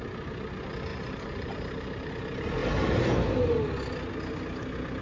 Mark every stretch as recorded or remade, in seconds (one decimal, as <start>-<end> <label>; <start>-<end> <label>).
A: 0.0-0.9 recorded; 0.9-2.1 remade; 2.1-5.0 recorded